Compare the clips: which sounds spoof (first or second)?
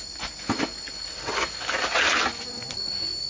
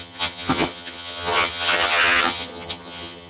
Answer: second